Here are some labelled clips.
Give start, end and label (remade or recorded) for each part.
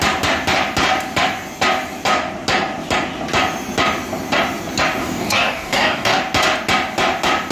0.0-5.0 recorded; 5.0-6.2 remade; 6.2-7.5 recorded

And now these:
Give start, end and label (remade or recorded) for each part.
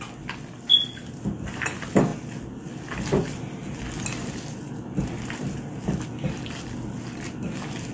0.0-7.9 recorded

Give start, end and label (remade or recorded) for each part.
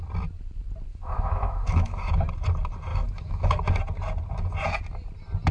0.0-0.9 recorded; 0.9-2.2 remade; 2.2-2.9 recorded; 2.9-3.6 remade; 3.6-5.5 recorded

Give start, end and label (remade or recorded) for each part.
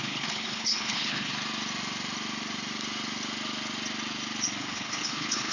0.0-1.3 remade; 1.3-4.6 recorded; 4.6-5.5 remade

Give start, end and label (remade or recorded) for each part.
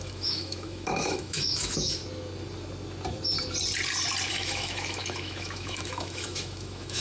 0.0-2.0 remade; 2.0-4.3 recorded; 4.3-7.0 remade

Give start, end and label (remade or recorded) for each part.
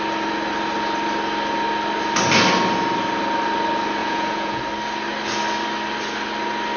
0.0-4.0 recorded; 4.0-4.6 remade; 4.6-6.8 recorded